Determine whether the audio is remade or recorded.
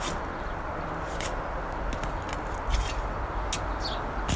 recorded